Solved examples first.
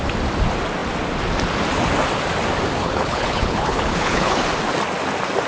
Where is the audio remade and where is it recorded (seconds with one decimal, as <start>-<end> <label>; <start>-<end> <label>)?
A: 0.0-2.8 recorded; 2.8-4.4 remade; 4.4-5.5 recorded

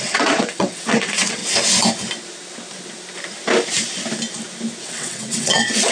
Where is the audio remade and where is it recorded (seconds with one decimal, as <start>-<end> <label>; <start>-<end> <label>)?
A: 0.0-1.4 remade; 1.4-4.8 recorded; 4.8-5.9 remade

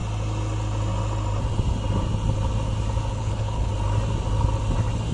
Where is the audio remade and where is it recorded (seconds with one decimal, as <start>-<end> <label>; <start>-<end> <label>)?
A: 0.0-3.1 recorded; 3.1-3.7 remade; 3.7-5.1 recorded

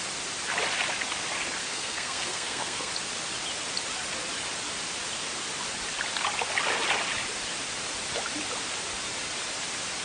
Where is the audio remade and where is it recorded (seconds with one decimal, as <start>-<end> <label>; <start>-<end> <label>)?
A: 0.0-1.6 recorded; 1.6-2.9 remade; 2.9-10.0 recorded

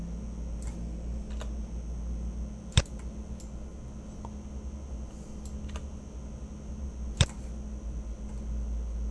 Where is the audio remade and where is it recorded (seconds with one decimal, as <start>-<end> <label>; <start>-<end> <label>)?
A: 0.0-9.1 recorded